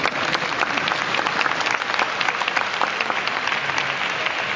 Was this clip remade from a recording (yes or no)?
no